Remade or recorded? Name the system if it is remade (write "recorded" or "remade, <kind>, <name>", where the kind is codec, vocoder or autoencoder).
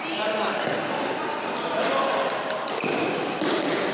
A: recorded